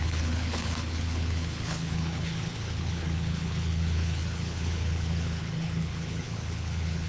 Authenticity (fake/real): fake